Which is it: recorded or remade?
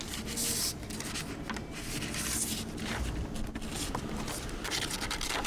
recorded